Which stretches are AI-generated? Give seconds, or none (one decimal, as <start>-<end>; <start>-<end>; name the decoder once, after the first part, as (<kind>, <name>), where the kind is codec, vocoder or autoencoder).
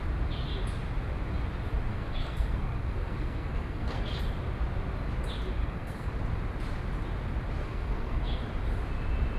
1.9-4.1 (codec, SNAC); 5.6-6.1; 7.6-8.4